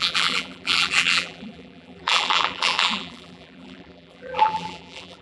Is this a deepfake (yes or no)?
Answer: yes